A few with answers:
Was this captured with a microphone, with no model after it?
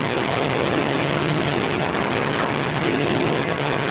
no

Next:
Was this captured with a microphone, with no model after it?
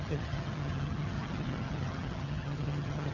no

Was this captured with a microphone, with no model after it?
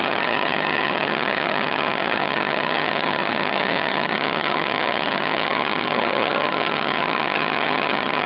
no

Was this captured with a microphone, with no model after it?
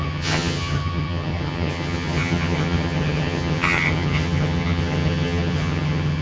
no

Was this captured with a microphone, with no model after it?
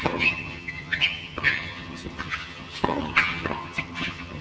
no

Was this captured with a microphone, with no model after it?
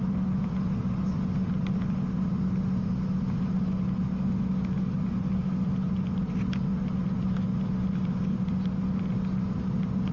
yes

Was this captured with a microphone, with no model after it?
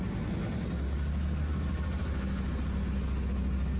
yes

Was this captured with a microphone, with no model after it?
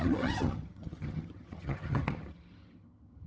no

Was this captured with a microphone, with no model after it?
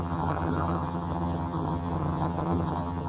no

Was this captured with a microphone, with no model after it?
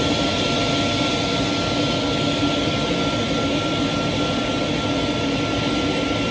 yes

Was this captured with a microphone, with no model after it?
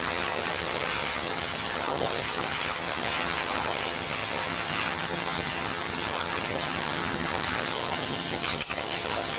no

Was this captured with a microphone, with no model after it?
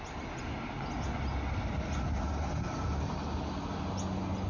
yes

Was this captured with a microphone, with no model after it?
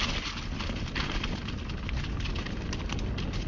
yes